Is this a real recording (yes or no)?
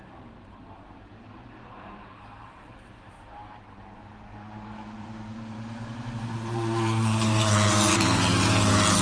no